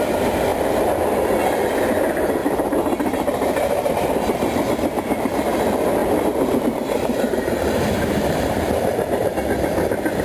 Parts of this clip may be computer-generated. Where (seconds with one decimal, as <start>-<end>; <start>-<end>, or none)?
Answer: 2.4-3.9; 6.0-9.3

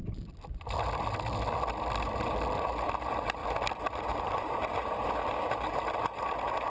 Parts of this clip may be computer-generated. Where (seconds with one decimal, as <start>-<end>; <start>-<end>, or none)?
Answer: 3.4-4.2

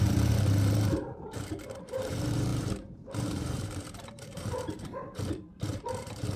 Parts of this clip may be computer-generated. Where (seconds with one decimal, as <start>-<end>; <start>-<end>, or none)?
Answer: 0.0-6.4

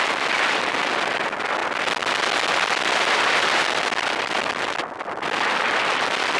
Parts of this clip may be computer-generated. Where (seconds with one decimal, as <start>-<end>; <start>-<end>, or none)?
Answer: none

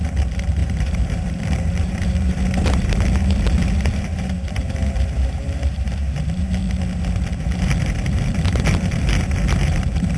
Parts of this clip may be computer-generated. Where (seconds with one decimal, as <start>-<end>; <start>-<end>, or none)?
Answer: 0.0-6.6; 7.4-10.2

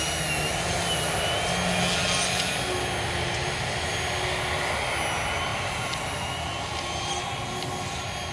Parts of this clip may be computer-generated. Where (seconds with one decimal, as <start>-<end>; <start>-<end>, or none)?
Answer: none

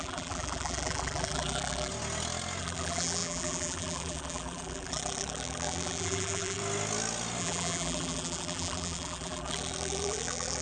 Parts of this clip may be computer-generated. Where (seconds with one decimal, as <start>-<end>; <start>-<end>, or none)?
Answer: 0.0-1.9; 2.6-6.6; 7.4-10.6